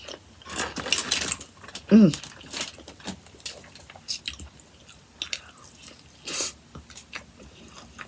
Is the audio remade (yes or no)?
no